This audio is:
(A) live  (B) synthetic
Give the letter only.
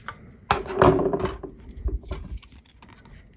A